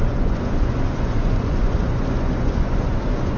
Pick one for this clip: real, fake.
fake